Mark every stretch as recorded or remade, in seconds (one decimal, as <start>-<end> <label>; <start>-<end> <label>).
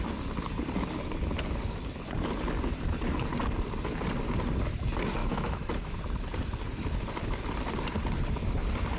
0.0-5.2 recorded; 5.2-6.0 remade; 6.0-9.0 recorded